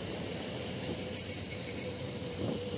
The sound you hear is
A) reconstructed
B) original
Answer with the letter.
A